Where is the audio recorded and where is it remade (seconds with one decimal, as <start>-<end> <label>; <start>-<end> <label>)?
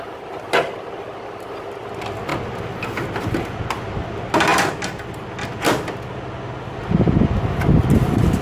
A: 0.0-8.4 recorded